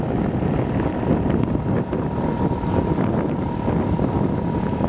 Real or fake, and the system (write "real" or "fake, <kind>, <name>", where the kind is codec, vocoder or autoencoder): real